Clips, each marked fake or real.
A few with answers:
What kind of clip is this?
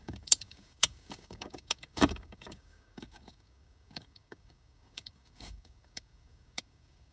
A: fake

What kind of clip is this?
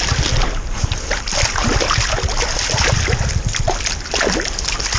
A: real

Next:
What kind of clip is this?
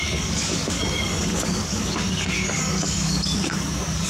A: fake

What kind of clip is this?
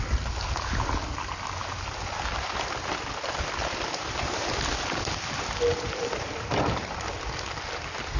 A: real